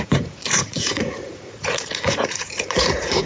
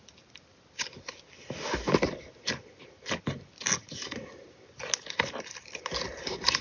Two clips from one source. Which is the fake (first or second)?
first